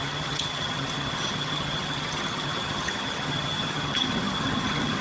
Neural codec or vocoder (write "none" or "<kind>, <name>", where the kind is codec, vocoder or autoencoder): vocoder, HiFi-GAN